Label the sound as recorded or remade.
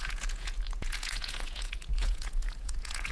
remade